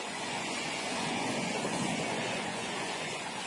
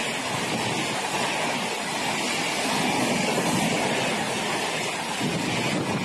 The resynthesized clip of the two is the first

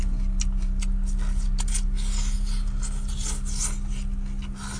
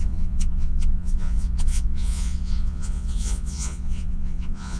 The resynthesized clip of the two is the second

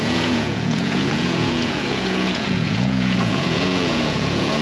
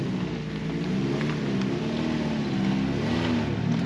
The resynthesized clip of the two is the first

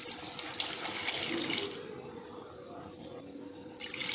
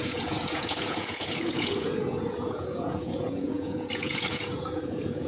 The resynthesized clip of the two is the second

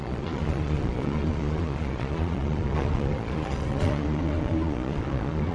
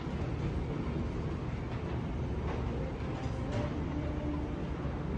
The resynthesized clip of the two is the first